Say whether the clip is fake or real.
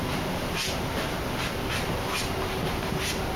real